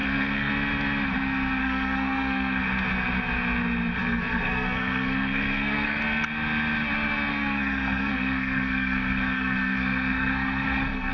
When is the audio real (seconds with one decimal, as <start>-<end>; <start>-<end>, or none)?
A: 0.5-1.6; 2.6-4.0; 6.0-7.3